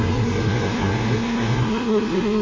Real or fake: fake